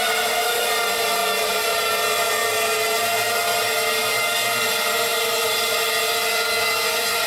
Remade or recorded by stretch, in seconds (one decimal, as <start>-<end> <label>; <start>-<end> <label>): 0.0-5.1 recorded; 5.1-5.7 remade; 5.7-7.3 recorded

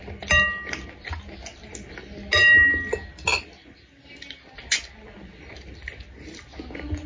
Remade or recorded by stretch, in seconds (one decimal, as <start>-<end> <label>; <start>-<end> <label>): 0.0-7.1 recorded

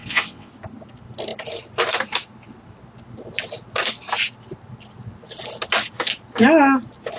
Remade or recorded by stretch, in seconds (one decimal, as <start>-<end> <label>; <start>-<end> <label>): 0.0-0.5 remade; 0.5-7.2 recorded